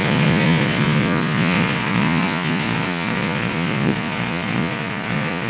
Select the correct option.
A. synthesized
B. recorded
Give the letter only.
A